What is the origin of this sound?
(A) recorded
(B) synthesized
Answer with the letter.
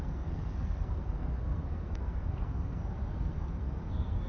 B